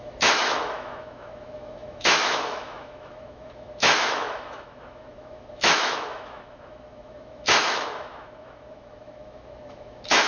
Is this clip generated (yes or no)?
yes